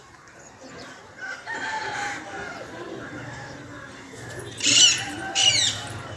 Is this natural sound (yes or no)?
no